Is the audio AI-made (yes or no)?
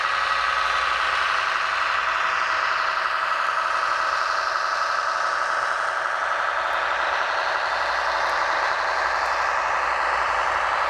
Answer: no